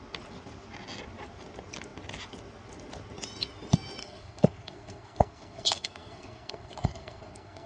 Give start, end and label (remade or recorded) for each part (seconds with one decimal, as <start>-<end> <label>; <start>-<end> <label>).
0.0-4.0 recorded; 4.0-7.7 remade